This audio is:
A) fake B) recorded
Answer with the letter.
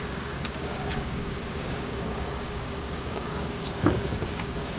A